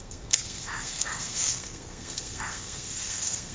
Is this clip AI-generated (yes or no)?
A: yes